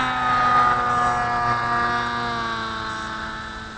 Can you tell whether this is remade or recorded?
recorded